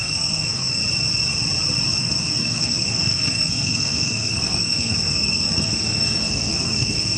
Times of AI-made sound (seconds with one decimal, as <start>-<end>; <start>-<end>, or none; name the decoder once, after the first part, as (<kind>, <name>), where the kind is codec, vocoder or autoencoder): 0.0-0.8 (codec, SNAC); 2.0-7.2